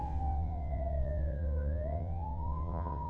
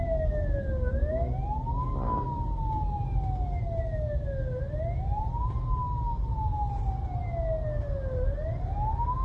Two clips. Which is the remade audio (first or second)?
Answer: first